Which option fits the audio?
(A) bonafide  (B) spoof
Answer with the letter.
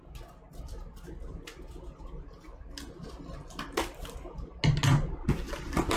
A